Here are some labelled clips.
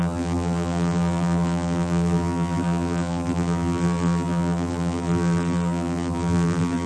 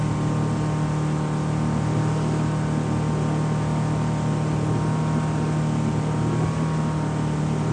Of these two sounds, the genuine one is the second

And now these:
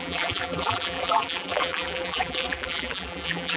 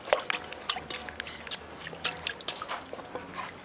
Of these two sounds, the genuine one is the second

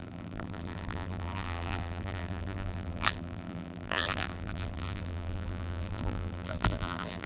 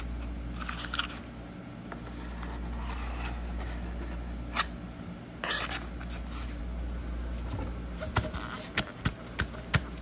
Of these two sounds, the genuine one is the second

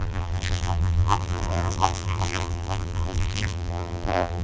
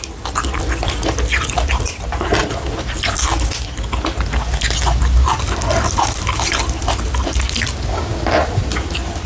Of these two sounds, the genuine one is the second